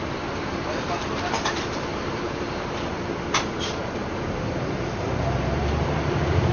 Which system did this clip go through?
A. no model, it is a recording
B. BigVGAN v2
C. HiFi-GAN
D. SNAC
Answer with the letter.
B